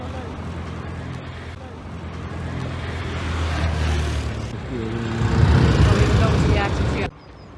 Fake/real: real